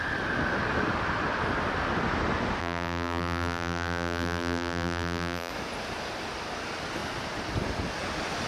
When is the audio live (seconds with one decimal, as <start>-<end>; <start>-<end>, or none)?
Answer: 0.0-2.6; 5.5-8.5